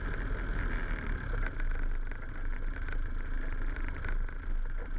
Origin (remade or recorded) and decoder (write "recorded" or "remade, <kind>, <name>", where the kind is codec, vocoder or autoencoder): recorded